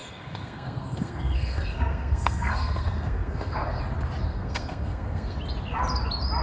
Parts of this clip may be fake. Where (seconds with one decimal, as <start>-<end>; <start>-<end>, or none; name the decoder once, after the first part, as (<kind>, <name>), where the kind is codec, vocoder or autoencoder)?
0.0-3.8 (codec, SNAC); 4.3-5.4